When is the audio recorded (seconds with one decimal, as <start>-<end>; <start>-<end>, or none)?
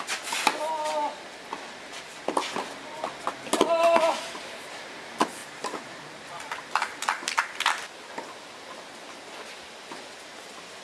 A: 0.0-5.4; 6.2-10.8